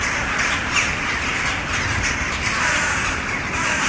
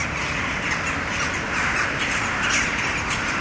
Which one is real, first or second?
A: second